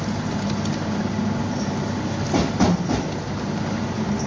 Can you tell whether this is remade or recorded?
recorded